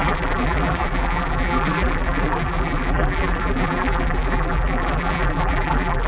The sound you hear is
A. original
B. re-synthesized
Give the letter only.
B